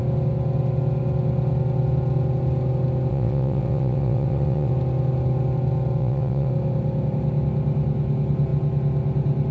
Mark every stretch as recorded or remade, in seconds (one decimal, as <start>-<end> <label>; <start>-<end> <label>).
0.0-3.1 recorded; 3.1-4.7 remade; 4.7-6.0 recorded; 6.0-6.5 remade; 6.5-9.5 recorded